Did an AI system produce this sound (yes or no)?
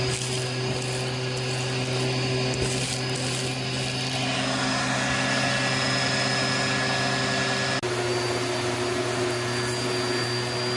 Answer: no